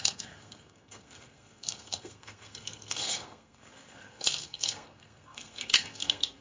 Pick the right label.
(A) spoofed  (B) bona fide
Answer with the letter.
A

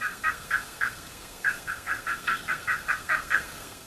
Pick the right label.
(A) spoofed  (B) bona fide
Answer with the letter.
A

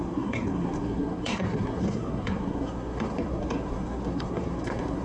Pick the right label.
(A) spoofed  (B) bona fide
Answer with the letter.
A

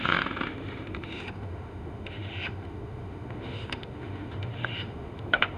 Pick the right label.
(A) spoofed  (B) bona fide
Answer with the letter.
A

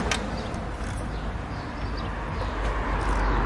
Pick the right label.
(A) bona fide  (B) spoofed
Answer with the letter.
A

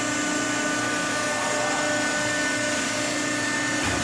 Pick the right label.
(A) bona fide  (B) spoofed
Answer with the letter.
A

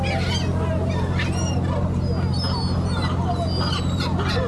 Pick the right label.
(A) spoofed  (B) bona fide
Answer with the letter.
B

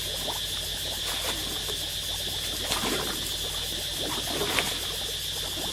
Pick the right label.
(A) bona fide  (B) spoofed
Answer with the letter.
A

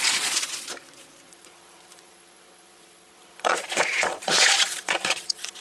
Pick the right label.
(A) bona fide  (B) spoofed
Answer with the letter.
B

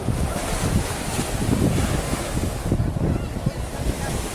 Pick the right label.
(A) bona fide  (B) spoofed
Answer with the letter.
A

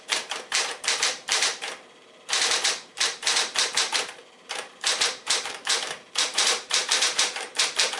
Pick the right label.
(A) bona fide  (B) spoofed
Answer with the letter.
B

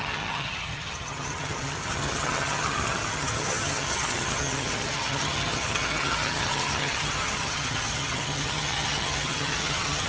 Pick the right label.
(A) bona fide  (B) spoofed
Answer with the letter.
B